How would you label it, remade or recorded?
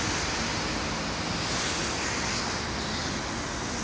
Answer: recorded